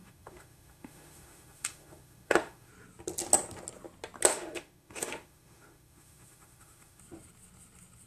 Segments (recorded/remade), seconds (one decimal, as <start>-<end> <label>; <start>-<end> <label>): 0.0-2.7 remade; 2.7-4.3 recorded; 4.3-7.0 remade; 7.0-8.1 recorded